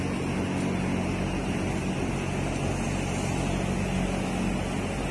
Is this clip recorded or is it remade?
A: recorded